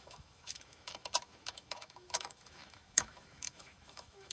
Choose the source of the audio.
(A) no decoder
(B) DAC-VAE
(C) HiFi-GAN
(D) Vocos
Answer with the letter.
B